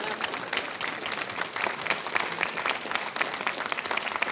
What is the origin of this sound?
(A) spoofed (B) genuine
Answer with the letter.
B